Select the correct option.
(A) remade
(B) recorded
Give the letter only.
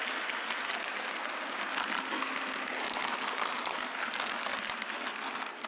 B